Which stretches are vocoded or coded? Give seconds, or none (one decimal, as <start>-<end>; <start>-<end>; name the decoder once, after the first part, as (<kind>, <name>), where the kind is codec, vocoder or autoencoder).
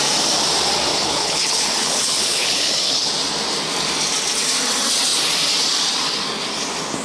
0.9-3.1 (codec, HILCodec)